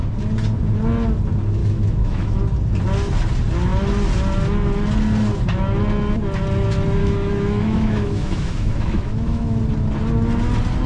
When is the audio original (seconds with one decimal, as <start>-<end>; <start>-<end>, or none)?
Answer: 0.0-1.6; 2.4-7.0; 9.6-10.9

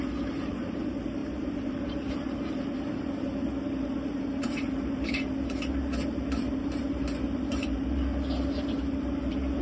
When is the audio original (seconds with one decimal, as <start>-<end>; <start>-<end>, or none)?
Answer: none

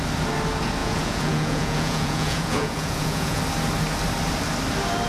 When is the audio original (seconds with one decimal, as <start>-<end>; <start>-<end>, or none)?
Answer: 0.0-0.8; 3.4-5.1

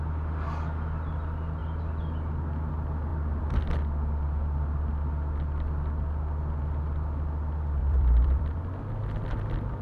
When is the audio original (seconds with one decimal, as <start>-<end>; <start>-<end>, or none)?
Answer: 0.0-3.1; 3.6-7.8; 8.6-9.8

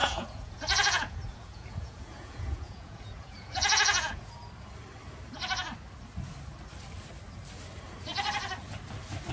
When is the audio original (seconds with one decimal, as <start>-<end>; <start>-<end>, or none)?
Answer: 4.3-9.3